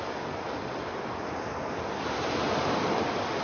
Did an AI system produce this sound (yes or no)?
no